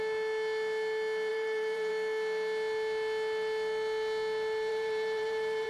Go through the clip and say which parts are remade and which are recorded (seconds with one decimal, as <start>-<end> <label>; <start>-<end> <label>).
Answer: 0.0-1.3 recorded; 1.3-1.9 remade; 1.9-4.7 recorded; 4.7-5.7 remade